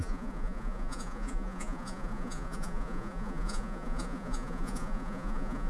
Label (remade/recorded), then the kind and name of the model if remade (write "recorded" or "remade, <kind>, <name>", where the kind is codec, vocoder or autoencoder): remade, vocoder, Vocos